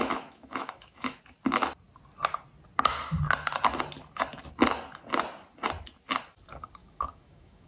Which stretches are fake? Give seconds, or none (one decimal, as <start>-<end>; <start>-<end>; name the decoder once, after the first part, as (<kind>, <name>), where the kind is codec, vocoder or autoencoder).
0.0-1.2 (autoencoder, DAC-VAE); 6.8-7.7